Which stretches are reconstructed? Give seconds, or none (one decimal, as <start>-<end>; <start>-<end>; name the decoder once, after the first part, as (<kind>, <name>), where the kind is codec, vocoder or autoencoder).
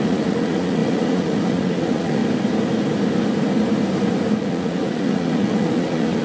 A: 0.0-2.2 (vocoder, Vocos); 4.4-6.2